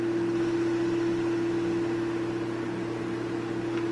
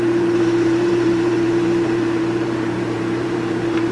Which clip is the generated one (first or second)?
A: second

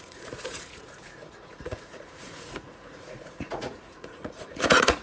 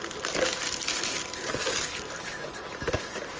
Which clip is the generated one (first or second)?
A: first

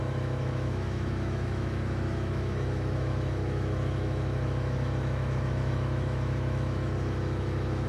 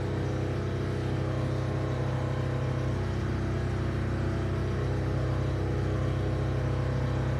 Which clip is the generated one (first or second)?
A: first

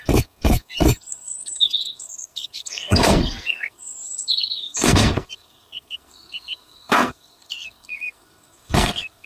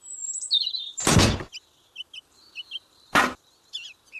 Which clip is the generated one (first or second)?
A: first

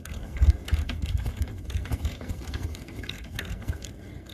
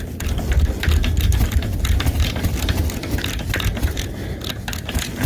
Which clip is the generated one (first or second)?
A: first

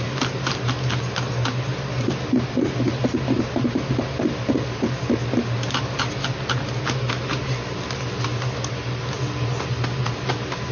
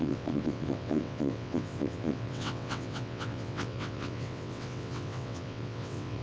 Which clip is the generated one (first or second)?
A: second